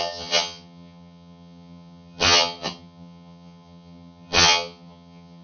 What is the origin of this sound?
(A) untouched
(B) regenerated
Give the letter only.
B